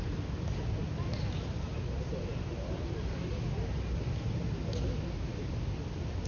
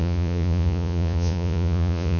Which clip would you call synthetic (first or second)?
second